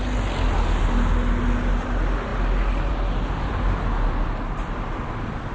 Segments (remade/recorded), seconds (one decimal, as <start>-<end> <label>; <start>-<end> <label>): 0.0-5.5 recorded